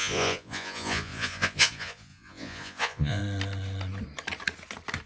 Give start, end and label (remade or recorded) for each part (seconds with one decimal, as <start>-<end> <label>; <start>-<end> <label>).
0.0-3.2 remade; 3.2-5.1 recorded